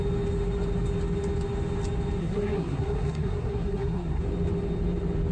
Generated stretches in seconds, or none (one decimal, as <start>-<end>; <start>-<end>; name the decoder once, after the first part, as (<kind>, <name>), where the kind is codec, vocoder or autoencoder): 2.2-4.2 (codec, SNAC)

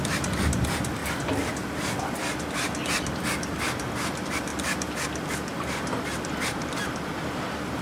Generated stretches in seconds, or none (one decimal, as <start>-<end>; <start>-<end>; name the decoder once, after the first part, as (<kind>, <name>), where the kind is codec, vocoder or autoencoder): 1.0-1.5 (vocoder, BigVGAN v2)